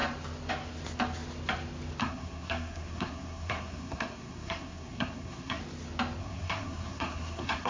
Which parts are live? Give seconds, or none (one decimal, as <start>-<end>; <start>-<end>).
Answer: 0.0-2.0; 5.6-6.2